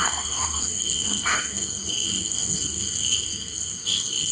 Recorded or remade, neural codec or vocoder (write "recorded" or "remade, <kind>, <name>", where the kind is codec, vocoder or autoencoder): remade, codec, SNAC